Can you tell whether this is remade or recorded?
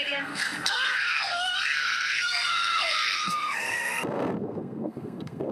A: remade